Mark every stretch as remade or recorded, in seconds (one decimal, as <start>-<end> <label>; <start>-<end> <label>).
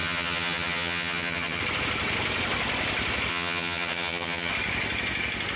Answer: 0.0-1.6 remade; 1.6-3.3 recorded; 3.3-4.5 remade; 4.5-5.6 recorded